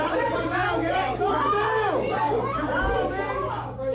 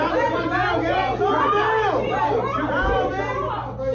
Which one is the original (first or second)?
second